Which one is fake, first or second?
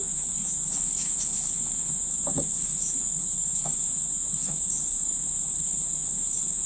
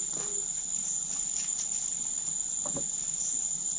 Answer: first